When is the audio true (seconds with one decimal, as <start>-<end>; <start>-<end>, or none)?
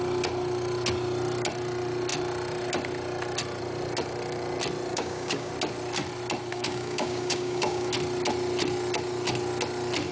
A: 0.0-4.9; 5.5-6.5; 7.9-10.1